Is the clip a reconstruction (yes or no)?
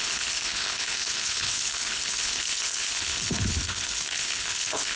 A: yes